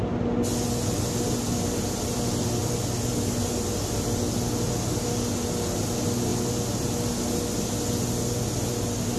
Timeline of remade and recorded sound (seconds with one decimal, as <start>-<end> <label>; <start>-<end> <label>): 0.0-9.2 recorded